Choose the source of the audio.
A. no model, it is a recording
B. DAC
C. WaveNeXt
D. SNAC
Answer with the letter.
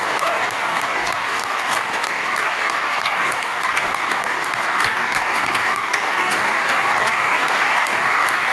B